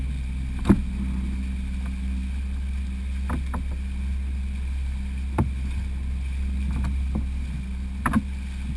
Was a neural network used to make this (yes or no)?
no